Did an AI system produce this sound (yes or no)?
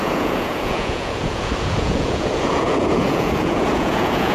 yes